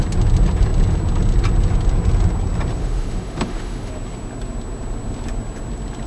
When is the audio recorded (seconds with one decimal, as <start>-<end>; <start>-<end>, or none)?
0.0-2.8; 3.9-6.1